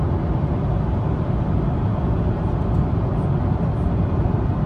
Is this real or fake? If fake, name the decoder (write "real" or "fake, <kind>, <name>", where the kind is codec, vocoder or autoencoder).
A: real